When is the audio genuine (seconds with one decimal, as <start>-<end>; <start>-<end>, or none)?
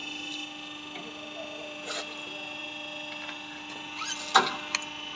0.0-5.2